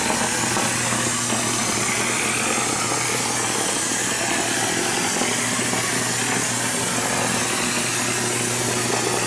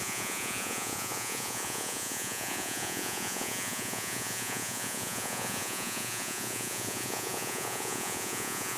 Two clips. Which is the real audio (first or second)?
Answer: first